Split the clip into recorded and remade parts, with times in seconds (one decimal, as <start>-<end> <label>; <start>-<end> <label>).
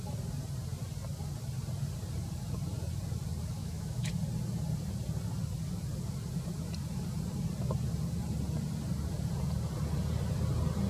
0.0-3.6 recorded; 3.6-4.1 remade; 4.1-10.9 recorded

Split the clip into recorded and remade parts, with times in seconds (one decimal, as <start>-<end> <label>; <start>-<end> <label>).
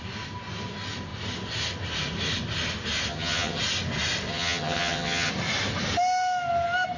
0.0-3.1 recorded; 3.1-3.6 remade; 3.6-4.3 recorded; 4.3-5.3 remade; 5.3-7.0 recorded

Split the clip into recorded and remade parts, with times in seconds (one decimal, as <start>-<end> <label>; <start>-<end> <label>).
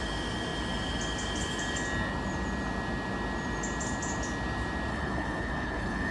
0.0-4.9 recorded; 4.9-6.1 remade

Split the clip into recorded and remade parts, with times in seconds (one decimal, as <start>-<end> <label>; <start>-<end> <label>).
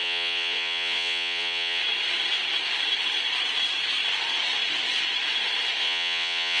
0.0-1.8 remade; 1.8-5.8 recorded; 5.8-6.6 remade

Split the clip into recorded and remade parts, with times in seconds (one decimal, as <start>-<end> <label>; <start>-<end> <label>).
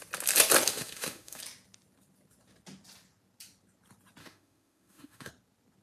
0.0-0.7 recorded; 0.7-1.4 remade; 1.4-4.2 recorded; 4.2-5.3 remade; 5.3-5.8 recorded